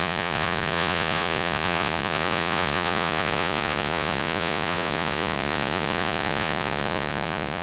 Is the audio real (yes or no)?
no